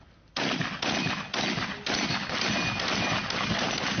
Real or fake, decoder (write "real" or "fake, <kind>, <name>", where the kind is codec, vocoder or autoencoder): real